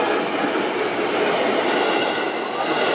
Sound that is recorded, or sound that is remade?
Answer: recorded